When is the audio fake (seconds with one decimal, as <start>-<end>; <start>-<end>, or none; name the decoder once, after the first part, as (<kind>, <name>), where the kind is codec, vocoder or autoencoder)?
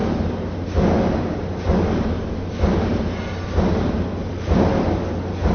none